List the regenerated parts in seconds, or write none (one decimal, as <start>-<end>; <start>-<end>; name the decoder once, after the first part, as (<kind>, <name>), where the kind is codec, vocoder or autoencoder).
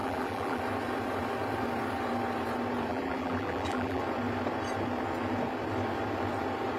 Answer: 0.0-0.6 (vocoder, BigVGAN v2); 2.9-4.0